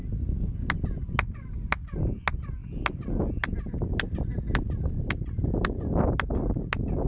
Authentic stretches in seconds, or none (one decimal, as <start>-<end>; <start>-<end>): 0.0-7.1